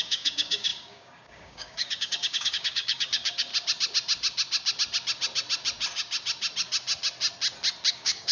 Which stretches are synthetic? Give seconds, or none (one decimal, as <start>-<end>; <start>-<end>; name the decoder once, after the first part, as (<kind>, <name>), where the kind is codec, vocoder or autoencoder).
0.0-3.5 (codec, DAC); 7.9-8.3